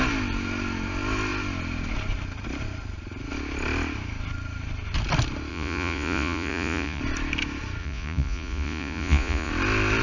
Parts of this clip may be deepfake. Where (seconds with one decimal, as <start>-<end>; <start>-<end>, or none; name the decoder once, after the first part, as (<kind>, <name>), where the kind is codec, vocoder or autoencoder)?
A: 5.5-7.0 (vocoder, Vocos); 7.8-9.5